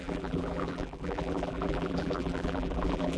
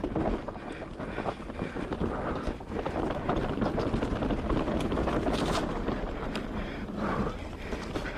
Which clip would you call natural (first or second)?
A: second